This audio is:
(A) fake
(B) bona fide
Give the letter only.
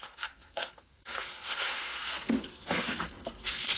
A